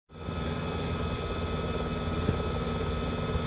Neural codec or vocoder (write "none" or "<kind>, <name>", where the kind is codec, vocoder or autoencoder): none